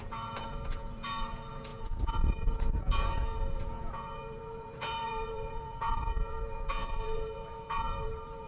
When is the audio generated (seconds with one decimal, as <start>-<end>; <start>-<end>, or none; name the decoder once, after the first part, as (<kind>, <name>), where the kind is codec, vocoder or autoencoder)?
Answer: 0.0-8.5 (vocoder, Vocos)